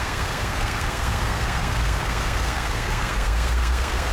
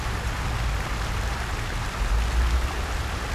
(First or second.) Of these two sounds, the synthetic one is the first